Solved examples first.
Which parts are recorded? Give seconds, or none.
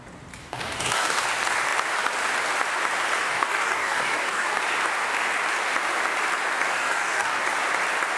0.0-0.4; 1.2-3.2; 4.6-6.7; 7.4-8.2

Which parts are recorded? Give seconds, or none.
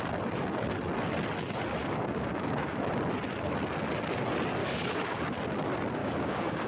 0.0-1.8; 2.8-4.6; 5.2-6.0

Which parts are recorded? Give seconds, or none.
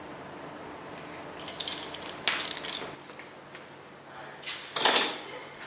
0.0-5.7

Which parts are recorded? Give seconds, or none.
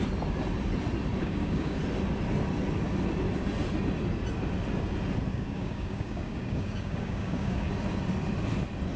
0.0-1.2; 1.8-5.3; 7.7-9.0